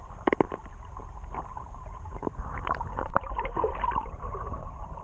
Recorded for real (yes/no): no